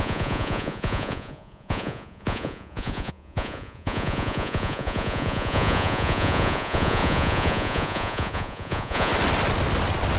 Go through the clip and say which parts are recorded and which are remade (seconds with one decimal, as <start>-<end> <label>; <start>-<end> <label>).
0.0-9.1 remade; 9.1-10.2 recorded